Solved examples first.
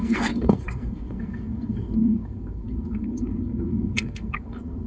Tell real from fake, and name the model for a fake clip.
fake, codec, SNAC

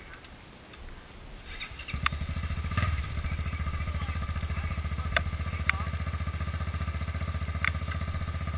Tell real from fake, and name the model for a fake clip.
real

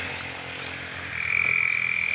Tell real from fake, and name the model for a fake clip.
real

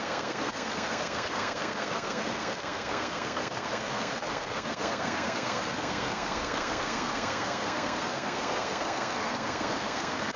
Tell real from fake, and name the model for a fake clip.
fake, codec, SNAC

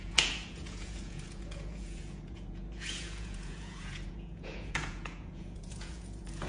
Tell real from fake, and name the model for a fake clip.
fake, vocoder, Vocos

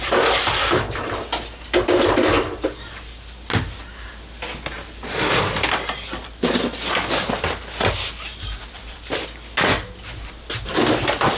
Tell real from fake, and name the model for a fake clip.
real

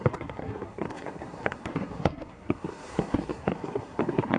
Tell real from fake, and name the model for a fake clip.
fake, codec, SNAC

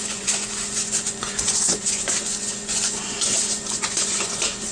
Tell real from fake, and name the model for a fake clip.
fake, vocoder, Vocos